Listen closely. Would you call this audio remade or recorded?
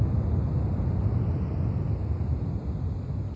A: recorded